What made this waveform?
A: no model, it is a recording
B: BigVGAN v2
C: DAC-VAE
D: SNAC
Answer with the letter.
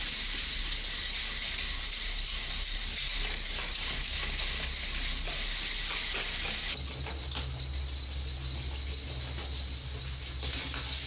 A